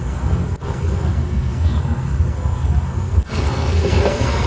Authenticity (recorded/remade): remade